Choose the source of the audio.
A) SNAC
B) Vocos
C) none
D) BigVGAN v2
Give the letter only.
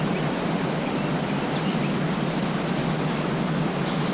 C